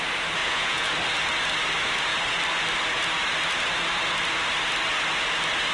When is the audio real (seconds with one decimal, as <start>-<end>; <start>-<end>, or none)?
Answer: 0.0-0.4; 0.9-5.7